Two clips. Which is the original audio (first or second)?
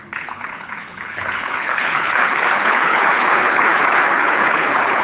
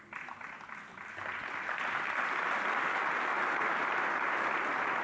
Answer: second